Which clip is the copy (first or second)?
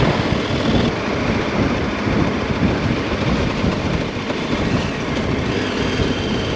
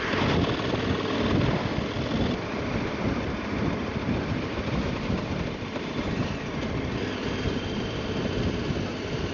second